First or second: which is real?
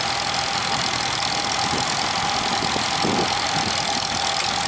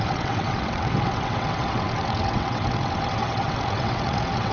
first